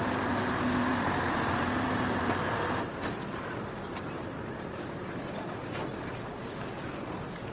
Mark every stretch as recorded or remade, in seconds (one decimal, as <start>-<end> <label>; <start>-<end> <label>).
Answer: 0.0-2.9 remade; 2.9-3.9 recorded; 3.9-5.2 remade; 5.2-7.5 recorded